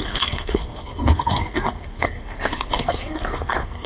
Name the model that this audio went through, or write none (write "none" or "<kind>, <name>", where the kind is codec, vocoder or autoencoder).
codec, SNAC